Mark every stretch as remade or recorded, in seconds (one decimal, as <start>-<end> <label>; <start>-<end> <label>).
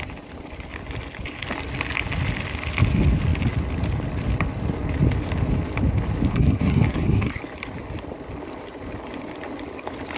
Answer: 0.0-6.3 recorded; 6.3-7.4 remade; 7.4-10.2 recorded